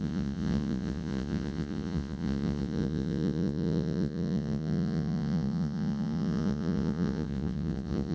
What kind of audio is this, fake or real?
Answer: fake